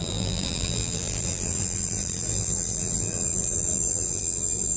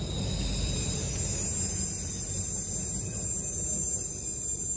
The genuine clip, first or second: second